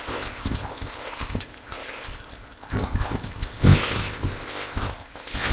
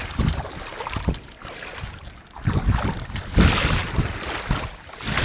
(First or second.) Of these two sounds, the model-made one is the first